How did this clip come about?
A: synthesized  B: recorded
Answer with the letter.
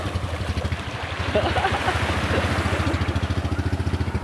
B